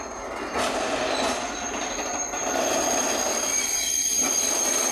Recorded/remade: recorded